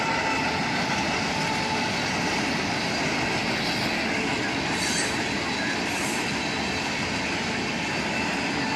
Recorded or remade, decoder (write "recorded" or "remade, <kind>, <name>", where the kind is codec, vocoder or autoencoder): recorded